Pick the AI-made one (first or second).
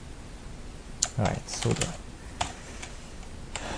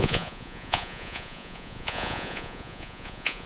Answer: second